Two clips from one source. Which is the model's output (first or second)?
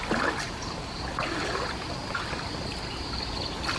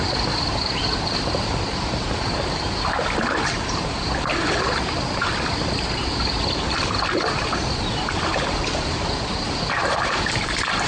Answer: second